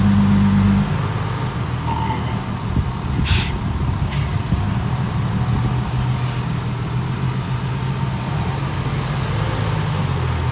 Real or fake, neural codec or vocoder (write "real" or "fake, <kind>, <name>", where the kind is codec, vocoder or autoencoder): real